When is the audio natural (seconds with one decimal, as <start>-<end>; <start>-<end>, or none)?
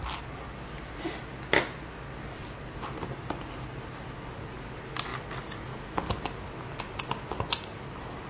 0.0-8.3